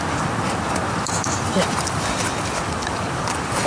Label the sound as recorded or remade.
remade